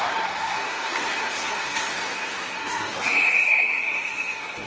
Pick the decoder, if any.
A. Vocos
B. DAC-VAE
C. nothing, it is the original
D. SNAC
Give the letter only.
D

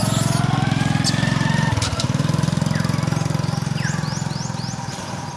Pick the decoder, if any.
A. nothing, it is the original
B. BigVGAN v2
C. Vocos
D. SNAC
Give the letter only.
A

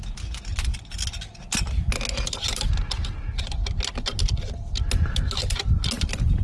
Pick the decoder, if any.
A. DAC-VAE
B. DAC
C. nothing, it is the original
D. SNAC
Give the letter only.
C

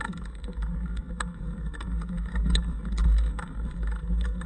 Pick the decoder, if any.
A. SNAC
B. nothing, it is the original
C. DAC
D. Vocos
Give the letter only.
A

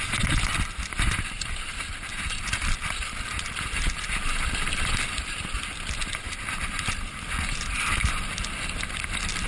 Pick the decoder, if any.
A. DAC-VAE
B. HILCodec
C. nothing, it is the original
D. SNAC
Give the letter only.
C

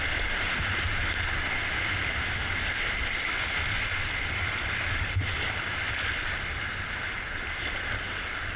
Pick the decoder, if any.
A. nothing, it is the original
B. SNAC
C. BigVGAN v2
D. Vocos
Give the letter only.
A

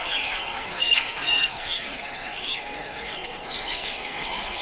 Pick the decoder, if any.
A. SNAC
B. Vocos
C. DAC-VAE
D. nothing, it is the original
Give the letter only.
A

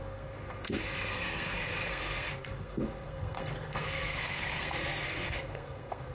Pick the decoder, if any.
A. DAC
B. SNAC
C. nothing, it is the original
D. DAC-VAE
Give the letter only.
B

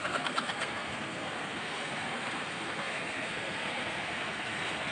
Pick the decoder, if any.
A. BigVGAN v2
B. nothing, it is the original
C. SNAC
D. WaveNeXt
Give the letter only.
C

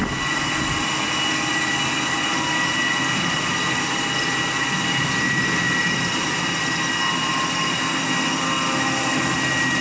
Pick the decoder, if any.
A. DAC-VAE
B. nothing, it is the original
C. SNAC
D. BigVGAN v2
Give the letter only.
B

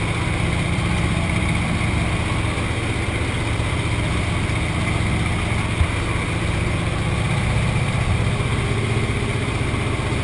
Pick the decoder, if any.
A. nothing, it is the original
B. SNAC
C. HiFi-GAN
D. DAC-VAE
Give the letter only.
A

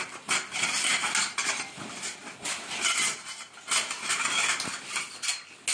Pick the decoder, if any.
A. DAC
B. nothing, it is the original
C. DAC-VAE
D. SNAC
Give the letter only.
B